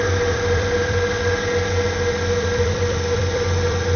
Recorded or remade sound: remade